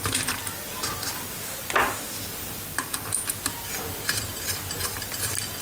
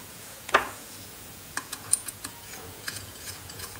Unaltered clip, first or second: first